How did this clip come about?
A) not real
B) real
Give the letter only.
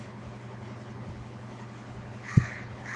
A